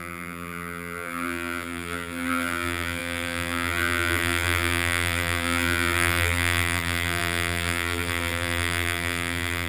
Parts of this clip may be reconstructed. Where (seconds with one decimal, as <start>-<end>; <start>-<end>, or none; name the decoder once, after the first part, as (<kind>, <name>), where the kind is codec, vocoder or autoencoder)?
0.0-9.7 (vocoder, BigVGAN v2)